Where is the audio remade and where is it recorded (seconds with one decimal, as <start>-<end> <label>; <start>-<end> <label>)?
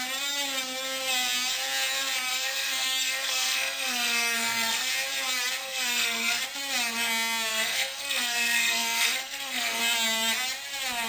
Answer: 0.0-2.3 recorded; 2.3-4.9 remade; 4.9-5.6 recorded; 5.6-6.4 remade; 6.4-7.5 recorded; 7.5-9.8 remade; 9.8-11.1 recorded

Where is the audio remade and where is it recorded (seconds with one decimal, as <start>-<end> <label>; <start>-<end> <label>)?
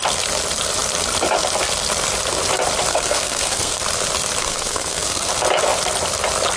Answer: 0.0-2.9 recorded; 2.9-3.8 remade; 3.8-4.4 recorded; 4.4-5.3 remade; 5.3-6.6 recorded